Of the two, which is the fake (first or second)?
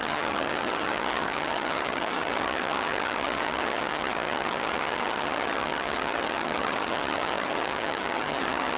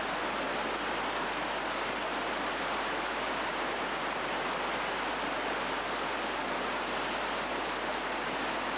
first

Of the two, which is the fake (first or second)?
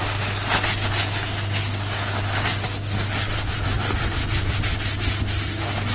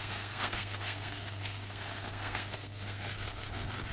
second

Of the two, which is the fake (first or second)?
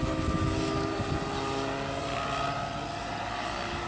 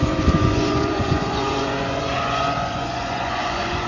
second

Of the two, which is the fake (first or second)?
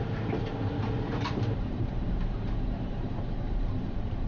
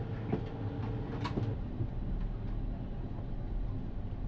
first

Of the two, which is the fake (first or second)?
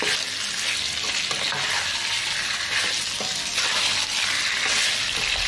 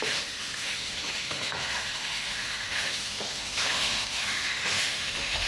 second